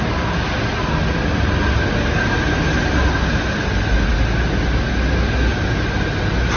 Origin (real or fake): real